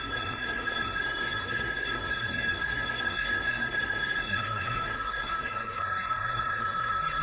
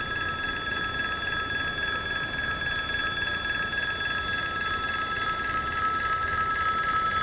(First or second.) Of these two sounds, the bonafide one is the second